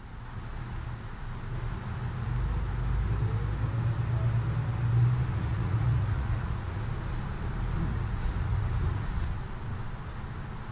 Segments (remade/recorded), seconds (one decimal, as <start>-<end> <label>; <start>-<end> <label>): 0.0-5.5 recorded; 5.5-6.9 remade; 6.9-7.9 recorded; 7.9-9.4 remade; 9.4-10.7 recorded